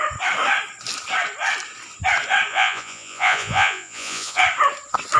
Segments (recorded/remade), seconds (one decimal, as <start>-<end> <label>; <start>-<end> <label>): 0.0-2.5 recorded; 2.5-4.4 remade; 4.4-5.2 recorded